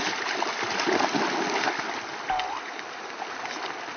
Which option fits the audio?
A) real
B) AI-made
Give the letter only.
A